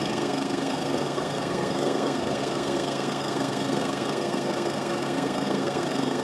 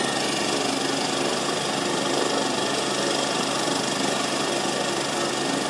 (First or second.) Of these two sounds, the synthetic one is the first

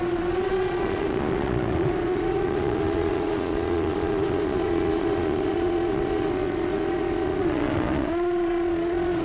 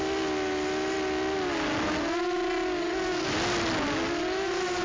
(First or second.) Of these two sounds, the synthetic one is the first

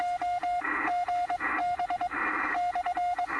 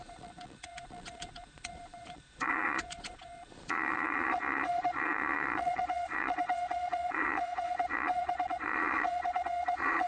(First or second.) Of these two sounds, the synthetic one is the second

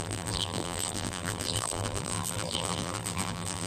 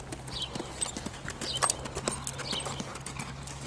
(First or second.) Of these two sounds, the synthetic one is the first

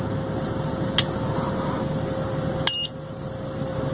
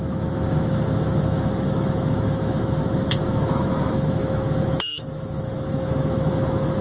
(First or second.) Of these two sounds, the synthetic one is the second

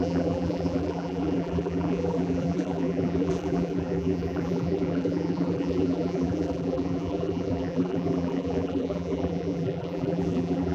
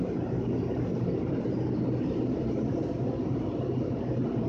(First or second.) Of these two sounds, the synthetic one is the first